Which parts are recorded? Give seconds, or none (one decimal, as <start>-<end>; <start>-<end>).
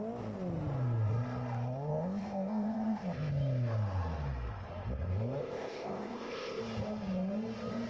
0.0-1.9; 3.3-5.4; 6.6-7.9